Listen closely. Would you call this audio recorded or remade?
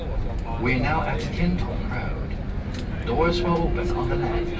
recorded